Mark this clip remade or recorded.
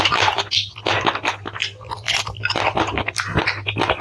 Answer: recorded